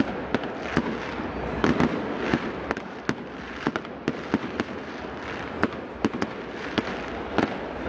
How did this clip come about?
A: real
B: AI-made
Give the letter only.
A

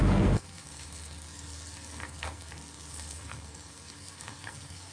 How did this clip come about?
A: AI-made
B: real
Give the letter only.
A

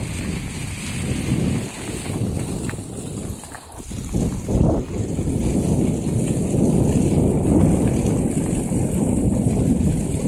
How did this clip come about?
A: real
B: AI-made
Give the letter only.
A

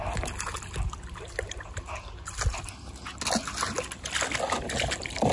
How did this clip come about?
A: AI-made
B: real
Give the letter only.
B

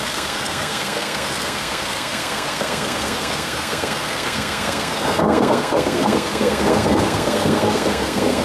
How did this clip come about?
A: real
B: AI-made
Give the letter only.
B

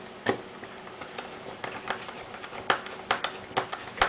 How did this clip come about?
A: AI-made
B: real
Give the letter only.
B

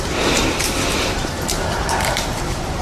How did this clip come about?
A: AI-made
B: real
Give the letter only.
A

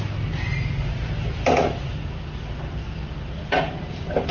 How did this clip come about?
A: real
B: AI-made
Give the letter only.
A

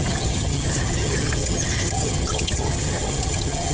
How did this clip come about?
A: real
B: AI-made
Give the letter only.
B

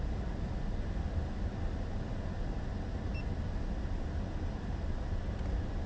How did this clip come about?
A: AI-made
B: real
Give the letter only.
B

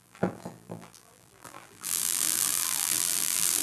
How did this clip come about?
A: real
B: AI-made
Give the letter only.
B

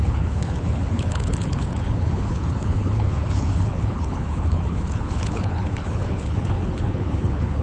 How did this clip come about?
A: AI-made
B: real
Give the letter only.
A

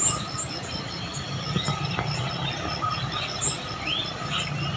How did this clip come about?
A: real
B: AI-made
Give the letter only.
A